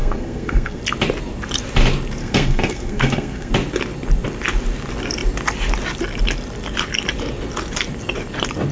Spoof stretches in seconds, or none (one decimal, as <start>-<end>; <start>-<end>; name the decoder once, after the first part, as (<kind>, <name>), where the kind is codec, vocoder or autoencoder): 0.0-0.8 (codec, SNAC); 2.2-3.5